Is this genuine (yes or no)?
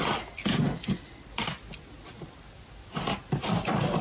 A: yes